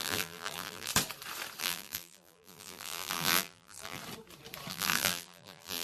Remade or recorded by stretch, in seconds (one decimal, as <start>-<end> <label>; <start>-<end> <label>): 0.0-0.9 remade; 0.9-1.6 recorded; 1.6-4.0 remade; 4.0-4.7 recorded; 4.7-5.8 remade